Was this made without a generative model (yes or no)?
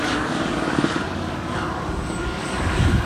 no